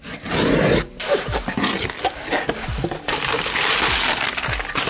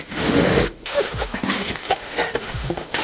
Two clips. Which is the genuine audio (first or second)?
first